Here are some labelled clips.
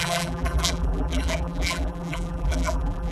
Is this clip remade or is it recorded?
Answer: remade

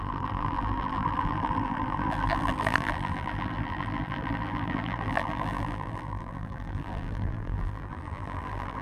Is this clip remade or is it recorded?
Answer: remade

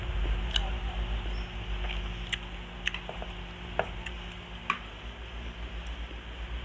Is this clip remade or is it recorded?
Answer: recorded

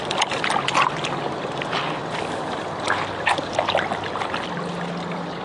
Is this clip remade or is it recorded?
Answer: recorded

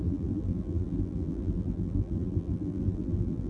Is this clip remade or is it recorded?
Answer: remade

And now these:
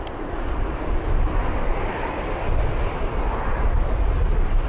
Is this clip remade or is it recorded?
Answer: remade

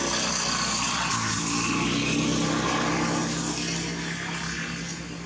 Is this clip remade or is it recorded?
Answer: recorded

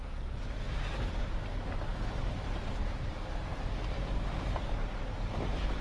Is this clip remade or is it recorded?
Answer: remade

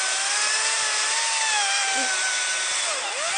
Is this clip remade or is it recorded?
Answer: recorded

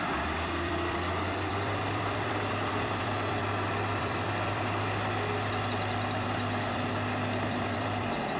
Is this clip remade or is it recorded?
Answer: remade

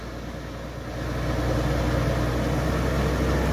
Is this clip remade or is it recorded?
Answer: recorded